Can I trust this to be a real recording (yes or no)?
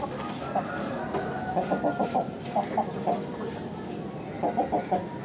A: yes